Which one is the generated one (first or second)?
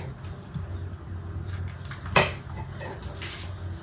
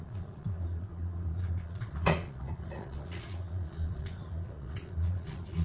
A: second